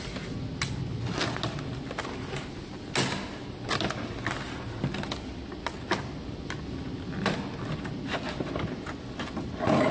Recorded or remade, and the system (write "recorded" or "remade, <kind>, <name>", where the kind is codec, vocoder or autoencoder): recorded